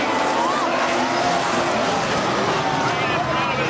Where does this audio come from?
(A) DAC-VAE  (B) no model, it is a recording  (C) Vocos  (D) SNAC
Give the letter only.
B